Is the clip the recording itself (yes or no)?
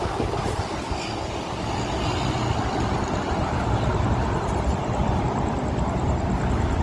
yes